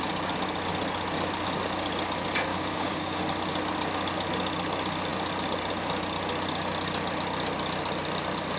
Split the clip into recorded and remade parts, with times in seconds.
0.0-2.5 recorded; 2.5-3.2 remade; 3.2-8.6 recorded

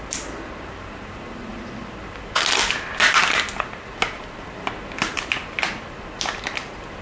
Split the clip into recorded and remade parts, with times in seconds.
0.0-7.0 recorded

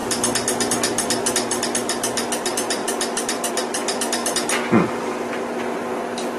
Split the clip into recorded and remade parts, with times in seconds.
0.0-6.4 recorded